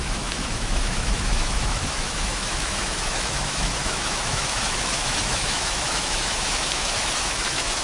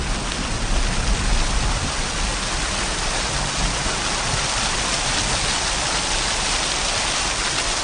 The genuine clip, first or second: second